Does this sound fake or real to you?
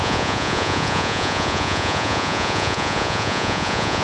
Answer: fake